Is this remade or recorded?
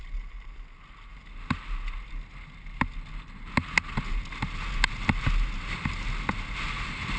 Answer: recorded